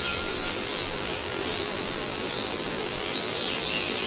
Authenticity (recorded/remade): remade